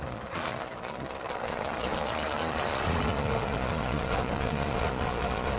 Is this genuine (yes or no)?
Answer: no